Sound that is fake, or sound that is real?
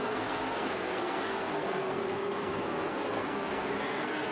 fake